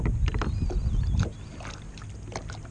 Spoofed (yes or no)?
no